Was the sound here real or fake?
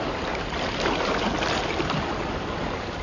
real